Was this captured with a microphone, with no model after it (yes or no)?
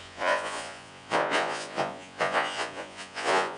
no